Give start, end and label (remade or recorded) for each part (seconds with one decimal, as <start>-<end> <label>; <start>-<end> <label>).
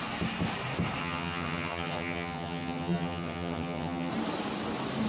0.0-1.0 recorded; 1.0-4.1 remade; 4.1-5.1 recorded